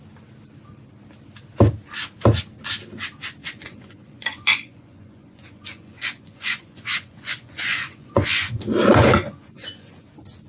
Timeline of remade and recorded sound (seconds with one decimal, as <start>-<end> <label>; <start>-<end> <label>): 0.0-3.4 recorded; 3.4-8.5 remade; 8.5-8.9 recorded; 8.9-10.1 remade; 10.1-10.5 recorded